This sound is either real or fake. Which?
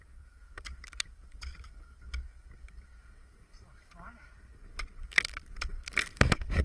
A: fake